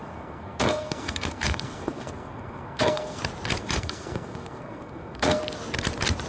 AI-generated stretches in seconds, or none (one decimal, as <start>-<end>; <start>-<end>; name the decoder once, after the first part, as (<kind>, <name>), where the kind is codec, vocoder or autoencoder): 0.0-3.2 (codec, SNAC); 3.6-5.4